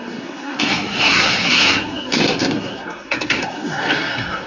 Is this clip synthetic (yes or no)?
yes